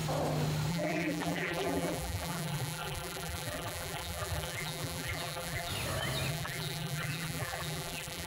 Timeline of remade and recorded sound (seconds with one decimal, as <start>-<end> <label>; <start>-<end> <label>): 0.0-0.7 recorded; 0.7-5.7 remade; 5.7-6.3 recorded; 6.3-8.3 remade